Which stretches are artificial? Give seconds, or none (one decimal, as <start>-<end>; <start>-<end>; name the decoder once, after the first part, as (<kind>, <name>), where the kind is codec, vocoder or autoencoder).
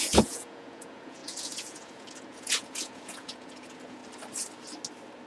0.0-4.0 (vocoder, Vocos)